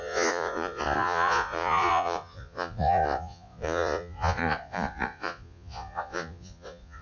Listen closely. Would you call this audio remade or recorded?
remade